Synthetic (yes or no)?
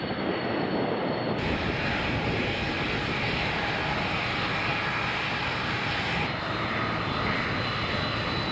no